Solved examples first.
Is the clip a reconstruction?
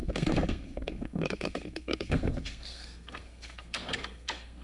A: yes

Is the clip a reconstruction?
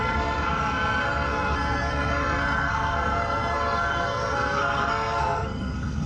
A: yes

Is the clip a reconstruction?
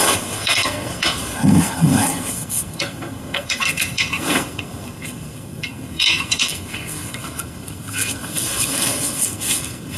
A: yes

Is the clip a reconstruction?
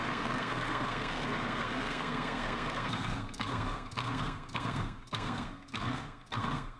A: yes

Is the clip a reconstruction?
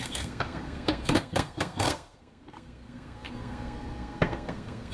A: yes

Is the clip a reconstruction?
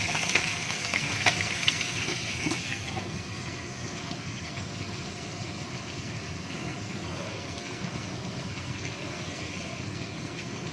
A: yes